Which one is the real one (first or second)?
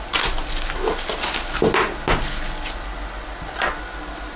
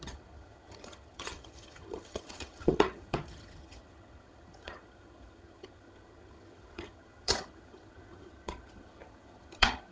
first